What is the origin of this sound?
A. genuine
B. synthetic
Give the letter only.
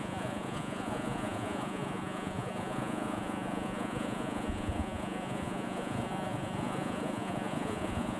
B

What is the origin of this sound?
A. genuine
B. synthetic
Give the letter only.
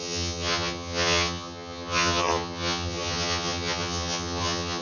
B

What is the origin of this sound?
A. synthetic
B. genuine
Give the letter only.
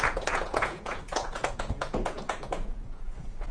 A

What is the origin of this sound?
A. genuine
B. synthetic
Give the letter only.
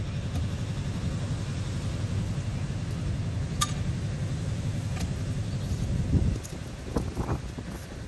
A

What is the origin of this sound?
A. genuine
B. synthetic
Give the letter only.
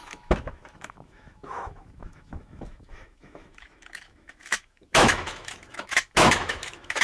B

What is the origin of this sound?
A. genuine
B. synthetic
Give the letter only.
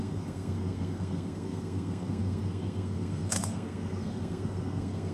B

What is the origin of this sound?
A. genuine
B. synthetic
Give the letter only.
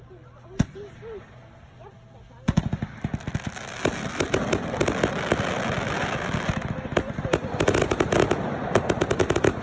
A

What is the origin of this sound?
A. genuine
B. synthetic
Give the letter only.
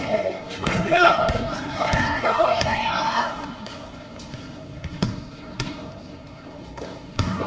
B